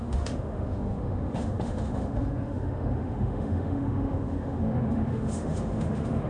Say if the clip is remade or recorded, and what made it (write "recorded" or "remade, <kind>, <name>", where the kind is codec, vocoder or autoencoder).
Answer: remade, autoencoder, DAC-VAE